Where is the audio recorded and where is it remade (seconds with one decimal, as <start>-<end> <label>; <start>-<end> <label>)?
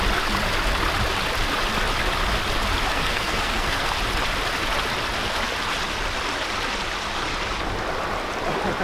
0.0-2.9 recorded; 2.9-3.9 remade; 3.9-8.8 recorded